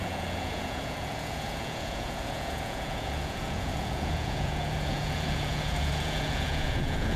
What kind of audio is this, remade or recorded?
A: remade